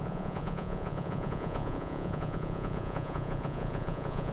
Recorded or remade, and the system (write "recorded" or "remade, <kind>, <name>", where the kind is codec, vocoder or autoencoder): remade, vocoder, Vocos